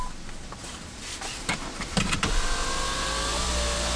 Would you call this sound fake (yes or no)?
no